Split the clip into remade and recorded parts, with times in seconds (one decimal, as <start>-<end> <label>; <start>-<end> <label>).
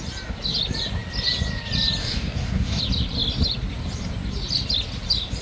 0.0-2.0 recorded; 2.0-2.8 remade; 2.8-5.4 recorded